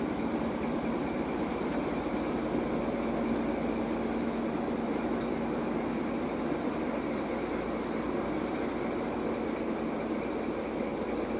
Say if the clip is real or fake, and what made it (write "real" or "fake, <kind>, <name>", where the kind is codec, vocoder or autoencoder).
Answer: real